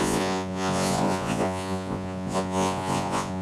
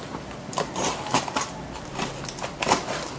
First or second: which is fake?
first